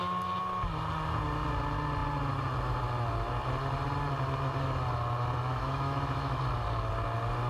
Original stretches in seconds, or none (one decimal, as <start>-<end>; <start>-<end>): 0.0-5.5; 6.4-7.5